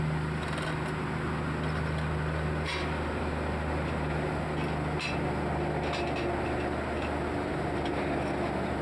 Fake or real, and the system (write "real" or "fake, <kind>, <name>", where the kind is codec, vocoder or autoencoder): real